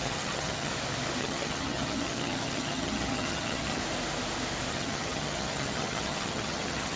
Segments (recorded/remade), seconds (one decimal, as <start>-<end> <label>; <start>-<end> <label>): 0.0-0.7 remade; 0.7-1.2 recorded; 1.2-3.8 remade; 3.8-4.7 recorded; 4.7-7.0 remade